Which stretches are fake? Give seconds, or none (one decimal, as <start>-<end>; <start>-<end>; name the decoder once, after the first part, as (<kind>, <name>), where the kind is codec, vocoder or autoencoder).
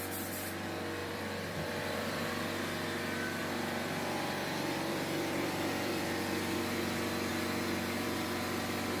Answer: 1.0-2.3 (vocoder, BigVGAN v2); 3.4-6.4; 7.3-9.0